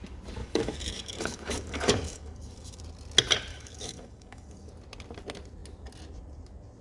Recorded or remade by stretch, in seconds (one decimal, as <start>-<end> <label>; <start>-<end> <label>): 0.0-0.4 recorded; 0.4-2.8 remade; 2.8-3.5 recorded; 3.5-4.7 remade; 4.7-6.8 recorded

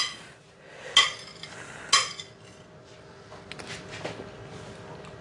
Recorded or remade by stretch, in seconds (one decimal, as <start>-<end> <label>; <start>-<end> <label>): 0.0-5.2 recorded

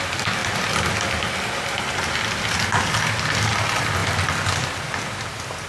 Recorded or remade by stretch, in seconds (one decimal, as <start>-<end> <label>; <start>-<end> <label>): 0.0-5.7 recorded

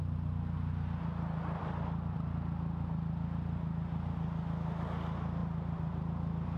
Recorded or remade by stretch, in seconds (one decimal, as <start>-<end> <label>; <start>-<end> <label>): 0.0-6.6 recorded

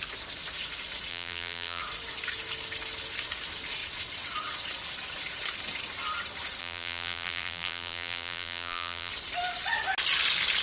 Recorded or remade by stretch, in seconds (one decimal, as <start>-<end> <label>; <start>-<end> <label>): 0.0-1.1 recorded; 1.1-1.8 remade; 1.8-6.6 recorded; 6.6-9.1 remade; 9.1-10.6 recorded

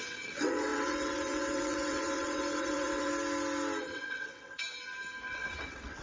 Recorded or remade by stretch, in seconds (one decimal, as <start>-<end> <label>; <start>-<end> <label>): 0.0-3.1 remade; 3.1-3.8 recorded; 3.8-4.6 remade; 4.6-5.3 recorded; 5.3-6.0 remade